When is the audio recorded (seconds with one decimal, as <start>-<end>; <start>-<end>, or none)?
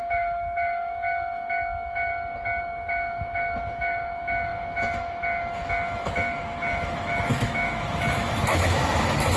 2.1-2.6